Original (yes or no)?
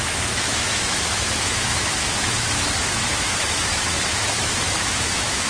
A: no